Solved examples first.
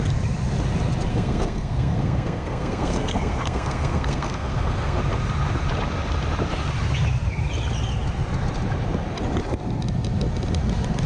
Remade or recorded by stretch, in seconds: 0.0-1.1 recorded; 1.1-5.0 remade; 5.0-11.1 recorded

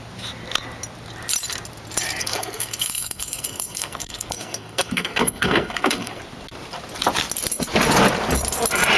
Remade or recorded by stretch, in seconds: 0.0-2.2 recorded; 2.2-6.2 remade; 6.2-9.0 recorded